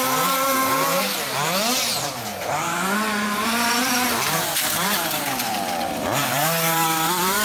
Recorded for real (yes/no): no